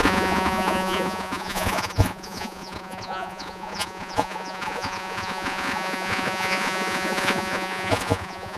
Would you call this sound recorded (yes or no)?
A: no